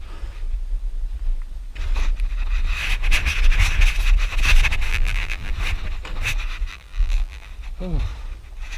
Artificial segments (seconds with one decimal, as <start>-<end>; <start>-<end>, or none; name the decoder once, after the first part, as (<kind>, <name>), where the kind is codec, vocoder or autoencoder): 4.9-5.5 (vocoder, BigVGAN v2); 6.7-7.5